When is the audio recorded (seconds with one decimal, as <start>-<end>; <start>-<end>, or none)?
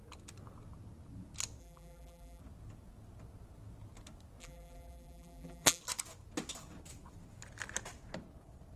0.0-1.6; 2.4-4.4; 5.8-8.8